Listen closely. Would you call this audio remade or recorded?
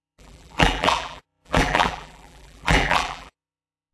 remade